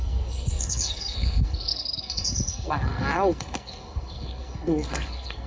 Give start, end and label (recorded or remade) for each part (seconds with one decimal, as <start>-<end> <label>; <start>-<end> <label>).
0.0-5.5 remade